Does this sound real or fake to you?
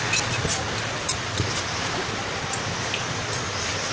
real